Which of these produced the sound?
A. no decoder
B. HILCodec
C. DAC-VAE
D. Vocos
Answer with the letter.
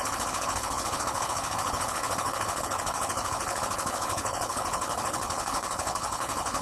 B